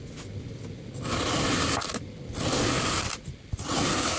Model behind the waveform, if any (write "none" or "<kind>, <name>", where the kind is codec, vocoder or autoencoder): none